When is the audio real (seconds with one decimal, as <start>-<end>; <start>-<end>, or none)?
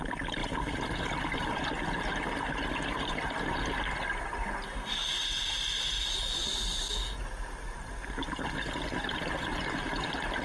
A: 0.0-10.4